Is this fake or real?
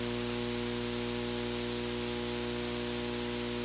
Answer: real